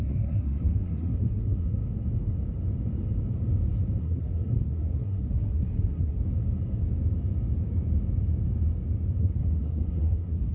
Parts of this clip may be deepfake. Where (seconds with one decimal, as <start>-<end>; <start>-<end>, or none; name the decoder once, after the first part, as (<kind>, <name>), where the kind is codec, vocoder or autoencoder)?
0.0-1.8 (codec, SNAC); 4.0-6.2; 9.2-10.5